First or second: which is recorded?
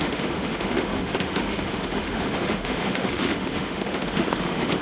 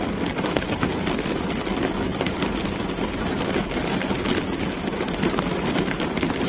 second